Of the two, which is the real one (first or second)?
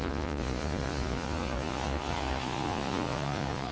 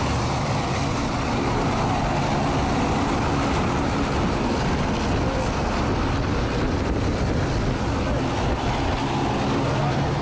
second